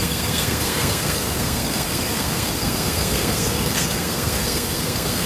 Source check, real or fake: fake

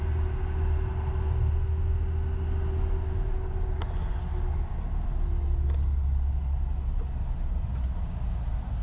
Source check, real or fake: real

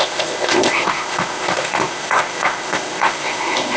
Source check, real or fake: fake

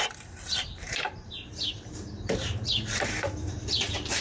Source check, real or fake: fake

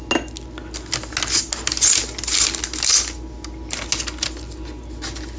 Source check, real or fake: real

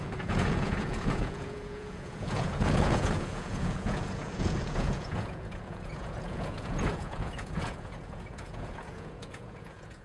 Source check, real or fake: fake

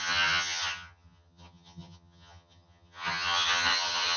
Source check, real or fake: fake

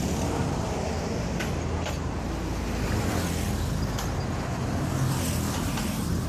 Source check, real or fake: real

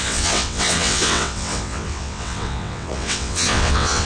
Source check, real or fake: fake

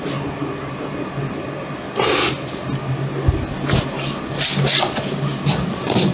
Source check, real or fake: real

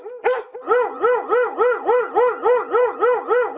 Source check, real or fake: real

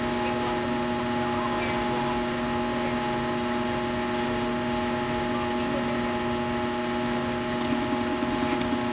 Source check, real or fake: real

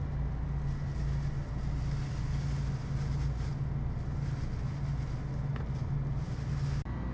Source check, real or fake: real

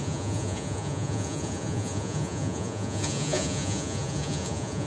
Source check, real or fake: fake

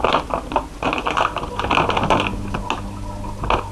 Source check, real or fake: real